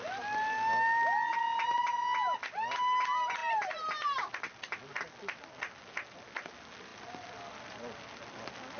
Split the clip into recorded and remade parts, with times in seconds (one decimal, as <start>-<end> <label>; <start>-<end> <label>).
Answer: 0.0-8.8 recorded